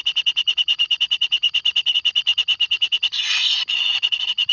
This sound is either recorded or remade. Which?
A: recorded